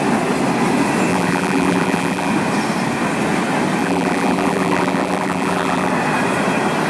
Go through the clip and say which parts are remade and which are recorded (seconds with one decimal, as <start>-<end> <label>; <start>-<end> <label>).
0.0-1.1 recorded; 1.1-2.3 remade; 2.3-3.8 recorded; 3.8-5.9 remade; 5.9-6.9 recorded